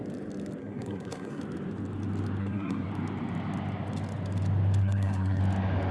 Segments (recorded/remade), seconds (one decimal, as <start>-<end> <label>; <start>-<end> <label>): 0.0-0.6 recorded; 0.6-1.4 remade; 1.4-2.4 recorded; 2.4-2.9 remade; 2.9-4.8 recorded; 4.8-5.4 remade; 5.4-5.9 recorded